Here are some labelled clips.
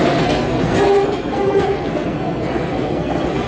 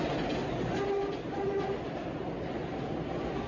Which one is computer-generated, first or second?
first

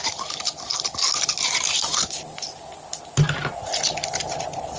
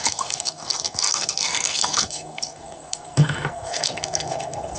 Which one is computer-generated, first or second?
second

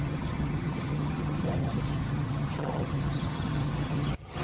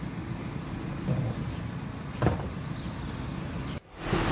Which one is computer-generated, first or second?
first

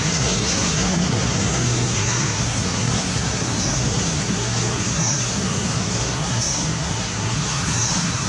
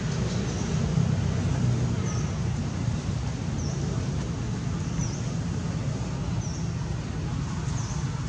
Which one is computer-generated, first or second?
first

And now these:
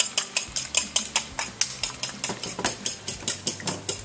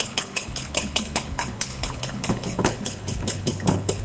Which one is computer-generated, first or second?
second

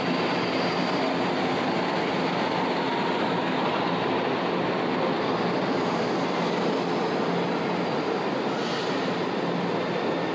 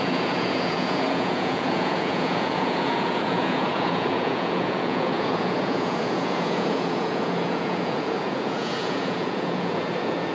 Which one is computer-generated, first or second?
second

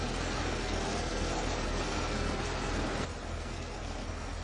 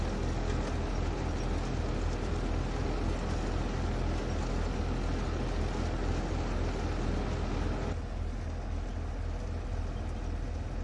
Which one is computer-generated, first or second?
first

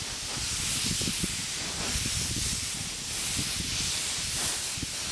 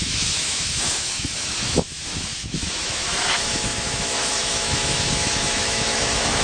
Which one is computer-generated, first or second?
second